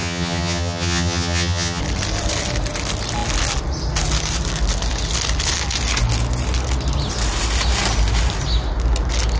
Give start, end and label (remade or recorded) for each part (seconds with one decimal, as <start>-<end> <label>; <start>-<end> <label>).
0.0-1.8 remade; 1.8-9.4 recorded